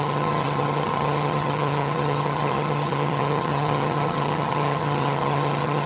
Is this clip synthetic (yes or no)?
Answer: yes